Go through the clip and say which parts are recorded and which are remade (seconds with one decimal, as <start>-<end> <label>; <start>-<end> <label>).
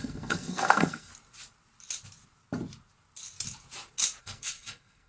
0.0-1.1 remade; 1.1-4.2 recorded; 4.2-5.1 remade